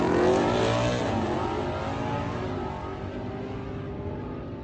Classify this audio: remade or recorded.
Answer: recorded